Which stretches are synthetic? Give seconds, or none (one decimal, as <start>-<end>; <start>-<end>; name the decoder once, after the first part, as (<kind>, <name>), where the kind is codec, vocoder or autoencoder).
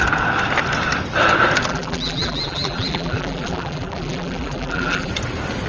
1.7-5.1 (vocoder, BigVGAN v2)